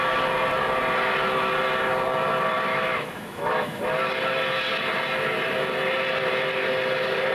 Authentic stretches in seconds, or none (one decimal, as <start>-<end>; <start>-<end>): 0.0-2.7; 3.8-7.3

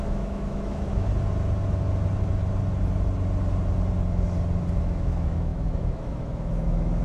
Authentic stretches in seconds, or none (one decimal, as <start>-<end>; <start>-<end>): 1.1-4.8

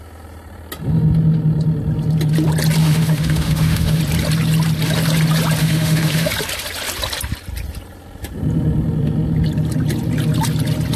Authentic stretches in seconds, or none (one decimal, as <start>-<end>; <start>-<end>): 0.0-2.8; 4.0-5.6; 6.3-11.0

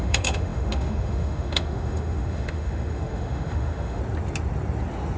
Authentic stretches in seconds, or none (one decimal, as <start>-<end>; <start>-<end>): 4.0-5.2

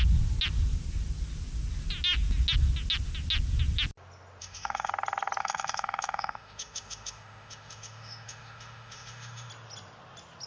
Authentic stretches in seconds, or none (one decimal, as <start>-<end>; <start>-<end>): 0.0-4.4; 4.9-5.4; 9.5-10.5